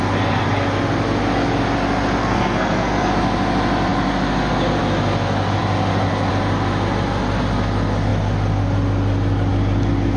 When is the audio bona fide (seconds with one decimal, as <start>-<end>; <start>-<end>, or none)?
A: 0.0-2.2; 3.1-10.2